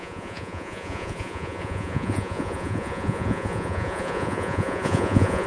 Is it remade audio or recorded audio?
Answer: remade